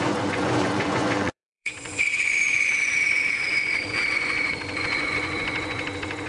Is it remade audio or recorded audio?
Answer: remade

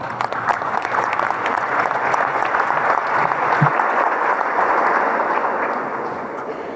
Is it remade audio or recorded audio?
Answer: remade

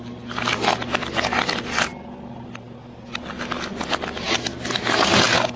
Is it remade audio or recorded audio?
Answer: recorded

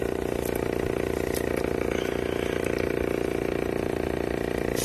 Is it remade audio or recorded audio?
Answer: recorded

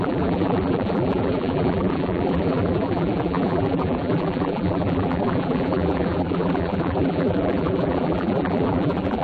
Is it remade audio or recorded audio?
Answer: remade